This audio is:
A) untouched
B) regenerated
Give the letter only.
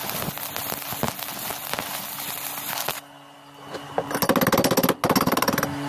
A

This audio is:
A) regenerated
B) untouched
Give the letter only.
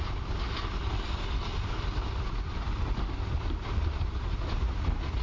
B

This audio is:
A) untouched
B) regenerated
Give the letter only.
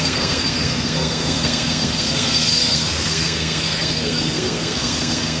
B